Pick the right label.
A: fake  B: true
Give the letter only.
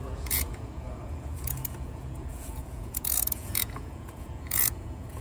A